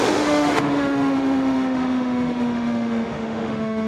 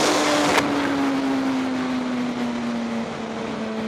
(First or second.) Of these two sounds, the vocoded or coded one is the first